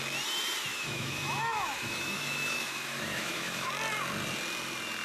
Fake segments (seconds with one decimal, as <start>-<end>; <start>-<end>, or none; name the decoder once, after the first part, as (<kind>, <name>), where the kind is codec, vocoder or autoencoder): 0.7-3.7 (autoencoder, DAC-VAE)